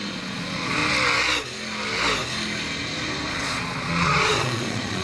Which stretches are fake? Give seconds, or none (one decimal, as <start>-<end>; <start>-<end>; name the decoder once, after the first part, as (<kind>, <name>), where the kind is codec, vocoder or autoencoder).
0.0-0.8 (vocoder, Vocos); 3.3-5.0